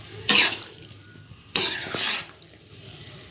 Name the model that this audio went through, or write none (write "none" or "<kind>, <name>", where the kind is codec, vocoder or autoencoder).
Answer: vocoder, BigVGAN v2